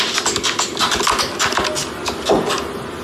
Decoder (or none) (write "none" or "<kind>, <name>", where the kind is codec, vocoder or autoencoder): none